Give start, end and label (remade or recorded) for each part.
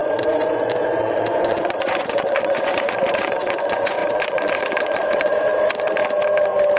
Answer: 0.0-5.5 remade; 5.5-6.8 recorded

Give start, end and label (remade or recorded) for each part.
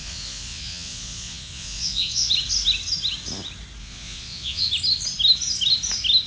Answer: 0.0-2.3 remade; 2.3-3.8 recorded; 3.8-4.7 remade; 4.7-6.3 recorded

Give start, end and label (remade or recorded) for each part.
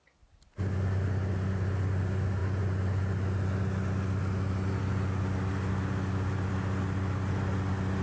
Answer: 0.0-8.0 recorded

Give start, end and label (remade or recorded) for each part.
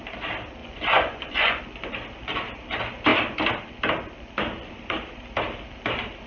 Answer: 0.0-0.6 recorded; 0.6-1.6 remade; 1.6-6.3 recorded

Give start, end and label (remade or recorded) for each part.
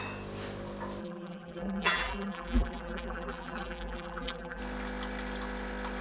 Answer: 0.0-1.0 recorded; 1.0-4.6 remade; 4.6-6.0 recorded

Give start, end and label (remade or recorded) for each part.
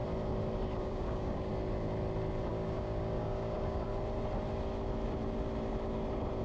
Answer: 0.0-0.8 recorded; 0.8-1.5 remade; 1.5-2.5 recorded; 2.5-3.9 remade; 3.9-6.4 recorded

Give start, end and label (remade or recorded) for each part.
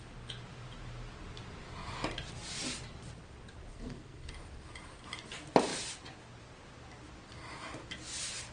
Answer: 0.0-3.7 recorded; 3.7-4.3 remade; 4.3-8.5 recorded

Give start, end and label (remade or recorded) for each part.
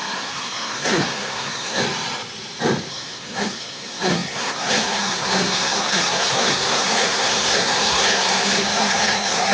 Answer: 0.0-1.8 remade; 1.8-2.9 recorded; 2.9-9.5 remade